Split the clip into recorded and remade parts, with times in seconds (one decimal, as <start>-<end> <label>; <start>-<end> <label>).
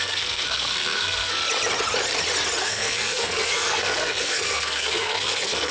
0.0-1.4 remade; 1.4-2.6 recorded; 2.6-5.7 remade